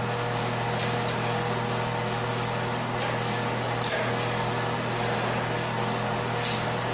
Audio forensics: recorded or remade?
recorded